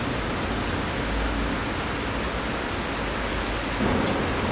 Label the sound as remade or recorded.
recorded